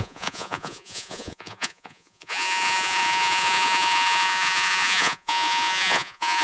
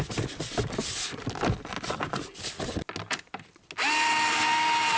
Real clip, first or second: second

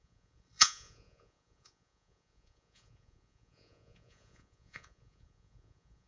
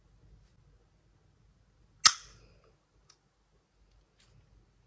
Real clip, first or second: second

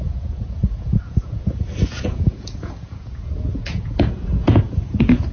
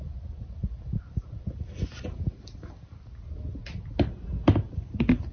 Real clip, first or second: second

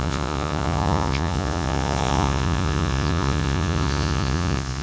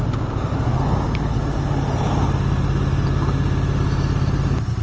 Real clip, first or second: second